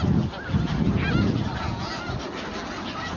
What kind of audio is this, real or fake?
real